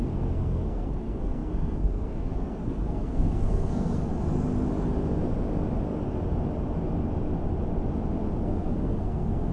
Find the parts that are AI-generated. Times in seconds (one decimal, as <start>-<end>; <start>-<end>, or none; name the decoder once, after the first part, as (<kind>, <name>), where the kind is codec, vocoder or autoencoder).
0.0-4.1 (codec, SNAC); 8.4-9.5